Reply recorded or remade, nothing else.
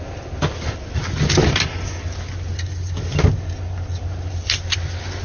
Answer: recorded